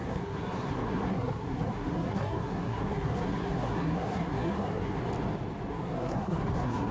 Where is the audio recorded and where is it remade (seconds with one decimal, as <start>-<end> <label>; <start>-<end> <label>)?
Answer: 0.0-5.0 remade; 5.0-5.7 recorded; 5.7-6.9 remade